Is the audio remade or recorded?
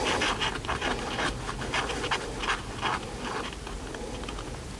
recorded